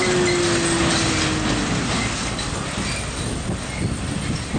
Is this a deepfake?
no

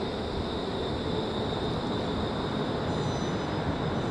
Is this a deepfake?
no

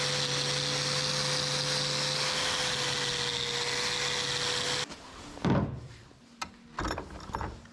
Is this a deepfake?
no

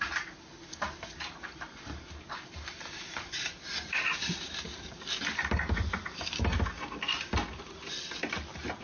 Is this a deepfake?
no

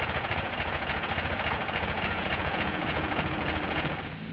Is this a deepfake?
yes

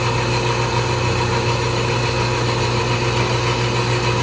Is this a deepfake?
no